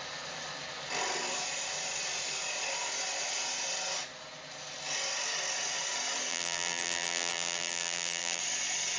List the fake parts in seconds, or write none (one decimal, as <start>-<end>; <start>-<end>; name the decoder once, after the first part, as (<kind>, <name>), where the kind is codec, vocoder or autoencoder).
6.3-8.4 (vocoder, BigVGAN v2)